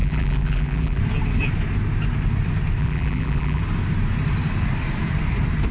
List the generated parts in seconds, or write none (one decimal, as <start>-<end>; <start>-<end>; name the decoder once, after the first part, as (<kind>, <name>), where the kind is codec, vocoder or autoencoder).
0.0-1.0 (vocoder, BigVGAN v2); 2.8-3.6